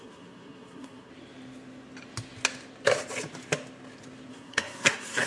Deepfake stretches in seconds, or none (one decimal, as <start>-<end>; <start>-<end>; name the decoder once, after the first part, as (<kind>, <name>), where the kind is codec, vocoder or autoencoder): 0.0-1.1 (codec, SNAC); 4.3-5.3